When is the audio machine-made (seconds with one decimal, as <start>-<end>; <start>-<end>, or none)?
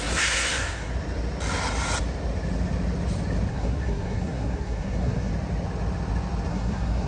0.0-0.9; 3.5-5.3; 6.5-7.1